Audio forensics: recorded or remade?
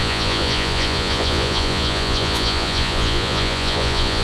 remade